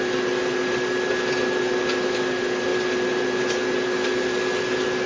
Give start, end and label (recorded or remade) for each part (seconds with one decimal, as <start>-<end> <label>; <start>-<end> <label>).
0.0-5.1 recorded